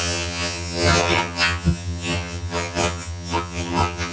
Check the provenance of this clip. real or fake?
fake